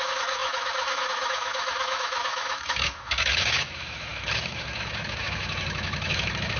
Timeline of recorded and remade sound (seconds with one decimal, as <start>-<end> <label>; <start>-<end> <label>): 0.0-6.6 remade